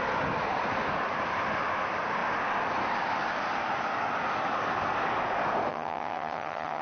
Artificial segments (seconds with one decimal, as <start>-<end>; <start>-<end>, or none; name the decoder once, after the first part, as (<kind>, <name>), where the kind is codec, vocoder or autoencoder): 5.7-6.8 (vocoder, HiFi-GAN)